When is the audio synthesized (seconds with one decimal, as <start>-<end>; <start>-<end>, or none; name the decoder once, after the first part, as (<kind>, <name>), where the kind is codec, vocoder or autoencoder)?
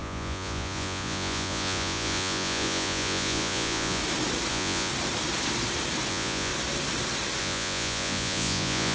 0.0-4.0 (vocoder, Vocos); 4.5-4.9; 6.1-6.5; 7.4-8.9